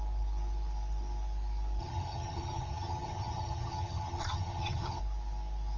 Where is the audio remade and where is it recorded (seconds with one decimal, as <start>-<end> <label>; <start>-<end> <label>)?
0.0-1.8 recorded; 1.8-5.0 remade; 5.0-5.8 recorded